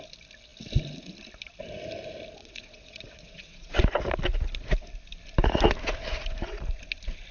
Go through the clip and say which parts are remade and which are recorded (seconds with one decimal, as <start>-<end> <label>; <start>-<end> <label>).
0.0-2.4 recorded; 2.4-3.8 remade; 3.8-7.3 recorded